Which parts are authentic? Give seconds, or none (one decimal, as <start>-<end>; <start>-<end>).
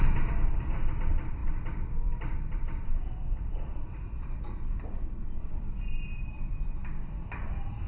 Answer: 0.0-1.4; 5.7-7.9